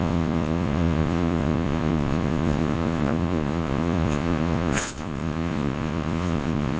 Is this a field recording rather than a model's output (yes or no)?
no